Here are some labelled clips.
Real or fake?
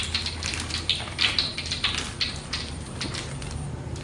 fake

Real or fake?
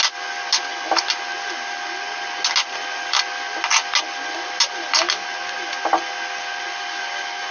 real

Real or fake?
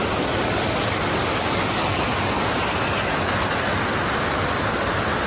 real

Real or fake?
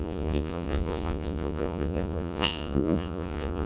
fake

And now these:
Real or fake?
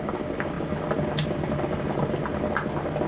real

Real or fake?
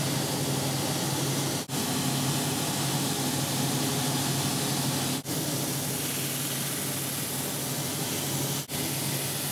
real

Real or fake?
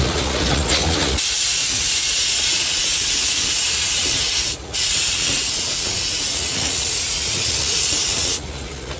fake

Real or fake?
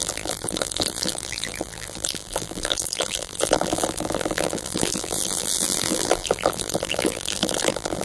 fake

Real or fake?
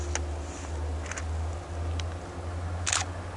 real